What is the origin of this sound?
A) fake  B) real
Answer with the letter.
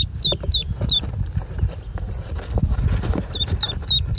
B